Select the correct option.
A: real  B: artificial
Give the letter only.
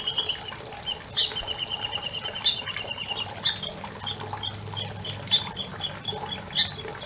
A